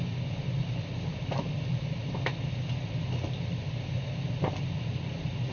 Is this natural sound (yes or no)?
yes